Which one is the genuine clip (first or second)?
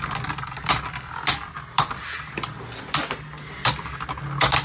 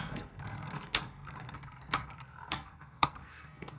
first